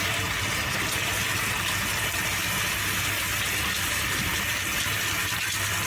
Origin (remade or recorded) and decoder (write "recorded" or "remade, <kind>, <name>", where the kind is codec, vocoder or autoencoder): recorded